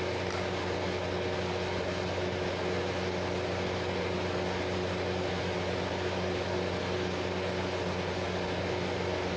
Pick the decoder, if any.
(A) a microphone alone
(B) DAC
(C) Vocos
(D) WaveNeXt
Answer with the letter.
A